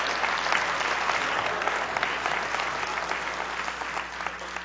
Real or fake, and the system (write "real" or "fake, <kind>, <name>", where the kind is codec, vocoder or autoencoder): real